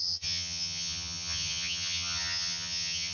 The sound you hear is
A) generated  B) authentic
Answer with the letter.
A